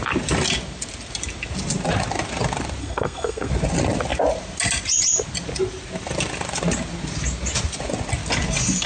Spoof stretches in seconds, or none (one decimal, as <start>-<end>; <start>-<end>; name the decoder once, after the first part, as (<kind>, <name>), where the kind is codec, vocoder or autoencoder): 2.8-3.5 (codec, SNAC)